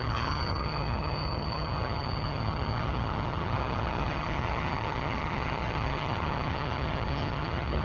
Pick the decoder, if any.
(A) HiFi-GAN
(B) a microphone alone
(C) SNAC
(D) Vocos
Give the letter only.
A